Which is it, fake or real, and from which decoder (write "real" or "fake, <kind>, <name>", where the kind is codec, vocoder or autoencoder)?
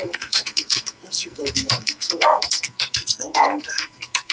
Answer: fake, codec, SNAC